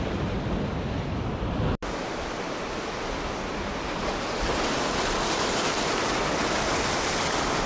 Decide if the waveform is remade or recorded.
recorded